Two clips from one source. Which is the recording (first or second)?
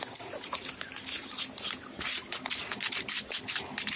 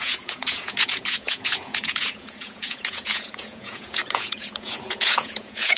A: first